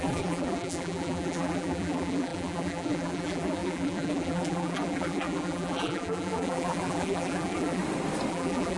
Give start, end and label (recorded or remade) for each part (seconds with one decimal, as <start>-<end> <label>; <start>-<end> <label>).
0.0-7.8 remade; 7.8-8.3 recorded; 8.3-8.8 remade